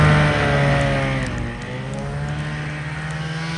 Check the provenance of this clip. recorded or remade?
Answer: recorded